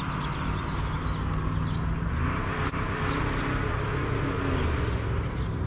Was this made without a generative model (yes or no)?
yes